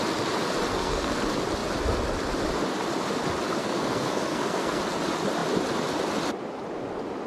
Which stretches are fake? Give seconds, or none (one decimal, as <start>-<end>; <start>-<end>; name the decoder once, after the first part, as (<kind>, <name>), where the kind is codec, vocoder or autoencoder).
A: 0.7-1.2 (codec, SNAC); 3.6-4.8